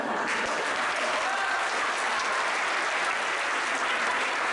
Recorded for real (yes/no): yes